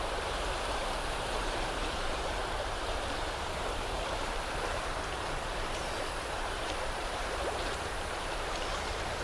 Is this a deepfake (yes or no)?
yes